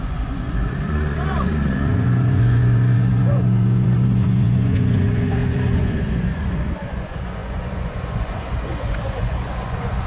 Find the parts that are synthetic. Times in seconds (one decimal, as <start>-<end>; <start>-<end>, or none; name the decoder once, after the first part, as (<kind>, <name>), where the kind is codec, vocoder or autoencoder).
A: 0.0-10.1 (vocoder, Vocos)